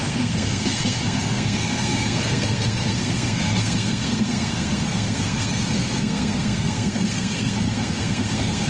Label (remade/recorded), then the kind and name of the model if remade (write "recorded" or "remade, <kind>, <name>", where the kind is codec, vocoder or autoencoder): remade, codec, SNAC